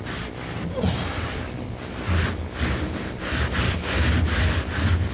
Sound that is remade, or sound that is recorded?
recorded